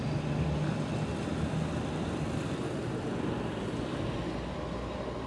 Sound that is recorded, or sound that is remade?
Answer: recorded